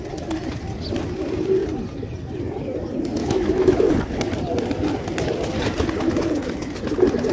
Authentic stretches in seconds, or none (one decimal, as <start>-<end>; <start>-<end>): 0.0-3.2; 3.9-7.3